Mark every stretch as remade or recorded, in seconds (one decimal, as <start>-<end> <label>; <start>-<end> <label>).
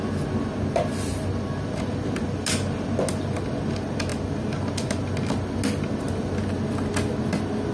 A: 0.0-7.7 recorded